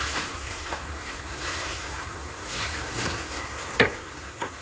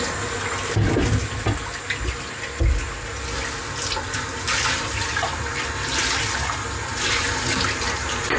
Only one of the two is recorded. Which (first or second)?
second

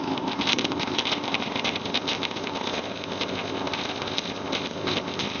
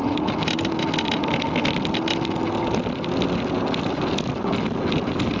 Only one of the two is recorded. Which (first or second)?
second